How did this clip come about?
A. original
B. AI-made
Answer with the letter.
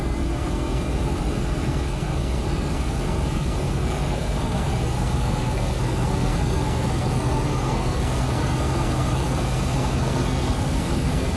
B